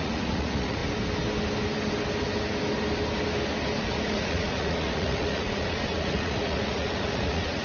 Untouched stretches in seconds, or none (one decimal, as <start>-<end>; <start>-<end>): 0.8-3.8